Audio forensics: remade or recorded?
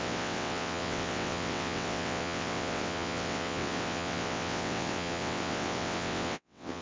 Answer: remade